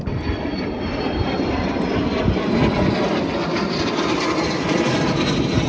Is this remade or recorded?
recorded